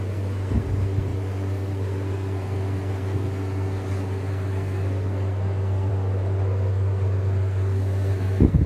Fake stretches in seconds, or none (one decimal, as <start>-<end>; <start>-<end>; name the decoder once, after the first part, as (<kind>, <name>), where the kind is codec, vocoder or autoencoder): 0.0-8.7 (codec, SNAC)